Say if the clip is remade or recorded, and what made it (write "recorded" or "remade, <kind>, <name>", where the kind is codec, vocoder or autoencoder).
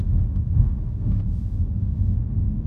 remade, autoencoder, DAC-VAE